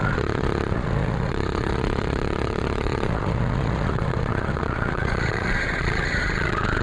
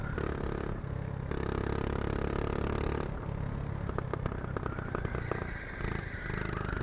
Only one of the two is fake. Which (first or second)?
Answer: first